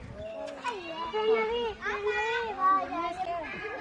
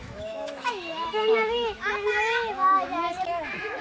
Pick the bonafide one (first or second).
first